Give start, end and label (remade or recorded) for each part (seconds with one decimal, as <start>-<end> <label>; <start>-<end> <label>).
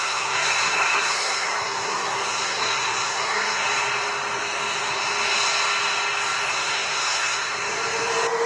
0.0-3.6 remade; 3.6-6.5 recorded; 6.5-7.5 remade; 7.5-8.5 recorded